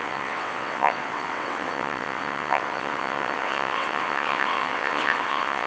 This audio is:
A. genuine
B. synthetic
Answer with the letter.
B